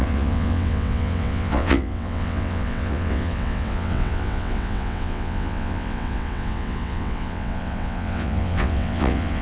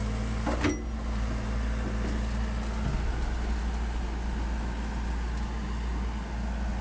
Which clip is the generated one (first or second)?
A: first